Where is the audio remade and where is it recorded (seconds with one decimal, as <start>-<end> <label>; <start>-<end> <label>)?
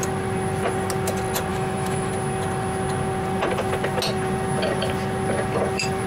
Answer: 0.0-1.5 recorded; 1.5-2.1 remade; 2.1-6.1 recorded